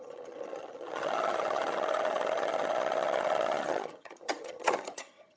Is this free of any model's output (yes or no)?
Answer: no